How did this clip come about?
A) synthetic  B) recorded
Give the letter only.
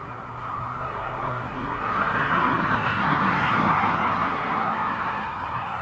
A